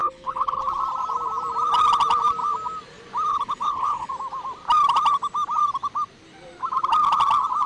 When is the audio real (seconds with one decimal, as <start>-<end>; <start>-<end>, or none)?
0.6-3.3; 4.1-7.7